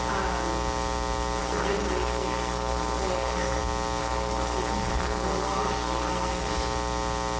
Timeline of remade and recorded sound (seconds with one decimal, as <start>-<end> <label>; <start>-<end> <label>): 0.0-1.4 recorded; 1.4-3.6 remade; 3.6-4.0 recorded; 4.0-6.5 remade; 6.5-7.4 recorded